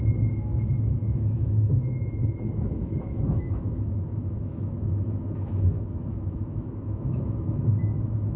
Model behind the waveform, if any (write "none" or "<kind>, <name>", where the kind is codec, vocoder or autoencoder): autoencoder, DAC-VAE